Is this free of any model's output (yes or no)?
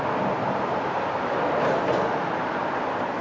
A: yes